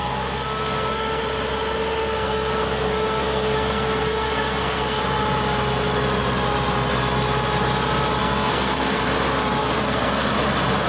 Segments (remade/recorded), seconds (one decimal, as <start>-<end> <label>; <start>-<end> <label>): 0.0-1.2 remade; 1.2-2.0 recorded; 2.0-5.0 remade; 5.0-8.2 recorded; 8.2-9.0 remade; 9.0-9.6 recorded; 9.6-10.3 remade; 10.3-10.9 recorded